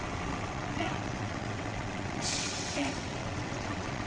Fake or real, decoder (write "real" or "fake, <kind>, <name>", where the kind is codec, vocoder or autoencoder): fake, vocoder, WaveNeXt